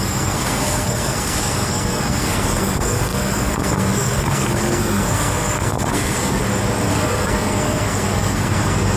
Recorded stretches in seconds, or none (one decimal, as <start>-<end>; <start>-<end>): 6.4-6.9